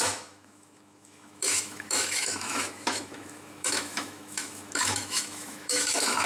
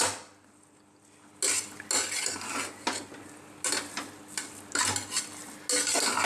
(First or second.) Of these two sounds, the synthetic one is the first